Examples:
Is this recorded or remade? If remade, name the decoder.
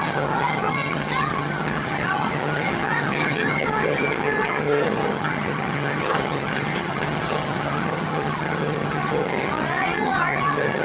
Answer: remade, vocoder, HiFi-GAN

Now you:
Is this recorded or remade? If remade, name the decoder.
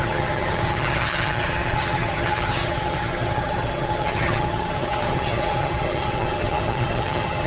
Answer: remade, vocoder, HiFi-GAN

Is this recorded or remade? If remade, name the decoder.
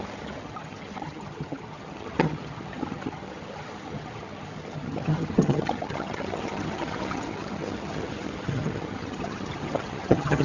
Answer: remade, vocoder, HiFi-GAN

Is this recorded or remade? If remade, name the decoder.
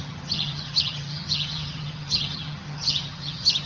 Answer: remade, vocoder, HiFi-GAN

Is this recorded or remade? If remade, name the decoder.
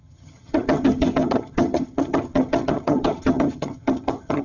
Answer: remade, vocoder, HiFi-GAN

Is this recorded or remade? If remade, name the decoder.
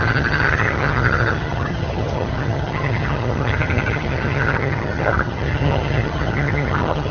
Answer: remade, vocoder, HiFi-GAN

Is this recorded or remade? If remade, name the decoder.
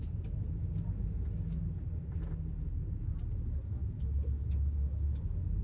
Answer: recorded